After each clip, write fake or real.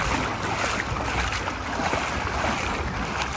real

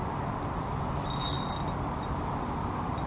real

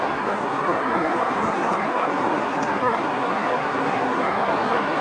fake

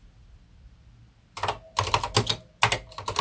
real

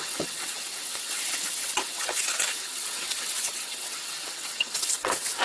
fake